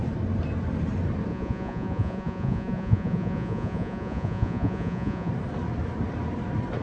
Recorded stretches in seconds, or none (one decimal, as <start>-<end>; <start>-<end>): 0.0-1.3; 5.3-6.8